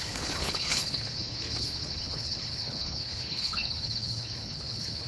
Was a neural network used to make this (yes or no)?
yes